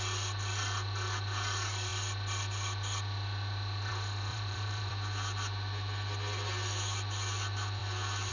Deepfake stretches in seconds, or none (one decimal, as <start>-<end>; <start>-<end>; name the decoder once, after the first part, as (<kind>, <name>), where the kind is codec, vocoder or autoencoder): 4.3-4.9 (vocoder, BigVGAN v2)